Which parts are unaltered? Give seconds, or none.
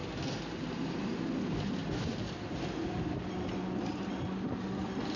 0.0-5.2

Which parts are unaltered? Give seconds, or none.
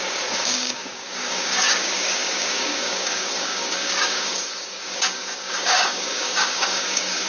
none